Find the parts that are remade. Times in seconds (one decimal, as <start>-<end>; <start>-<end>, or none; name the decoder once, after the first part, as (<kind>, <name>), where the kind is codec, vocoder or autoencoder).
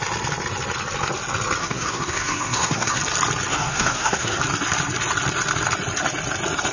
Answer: 1.6-3.0 (codec, SNAC); 3.5-4.4